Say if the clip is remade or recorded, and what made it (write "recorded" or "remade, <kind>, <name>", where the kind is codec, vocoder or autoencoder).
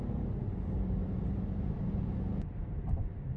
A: remade, vocoder, BigVGAN v2